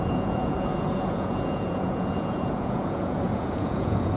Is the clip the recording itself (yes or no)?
no